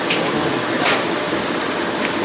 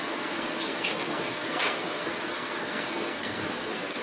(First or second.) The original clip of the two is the first